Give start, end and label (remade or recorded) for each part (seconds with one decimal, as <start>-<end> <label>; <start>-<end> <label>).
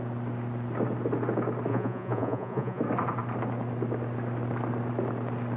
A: 0.0-1.7 recorded; 1.7-2.8 remade; 2.8-5.6 recorded